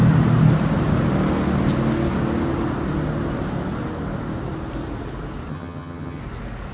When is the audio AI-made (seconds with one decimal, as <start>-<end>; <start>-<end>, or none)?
5.5-6.2